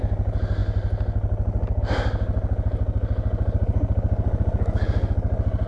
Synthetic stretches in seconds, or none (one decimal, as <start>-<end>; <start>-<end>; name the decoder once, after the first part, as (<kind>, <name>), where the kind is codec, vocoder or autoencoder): none